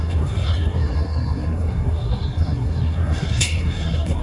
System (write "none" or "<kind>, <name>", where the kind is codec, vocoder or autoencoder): codec, SNAC